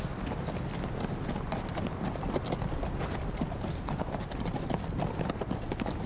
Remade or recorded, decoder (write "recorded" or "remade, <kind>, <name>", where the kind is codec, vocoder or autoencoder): recorded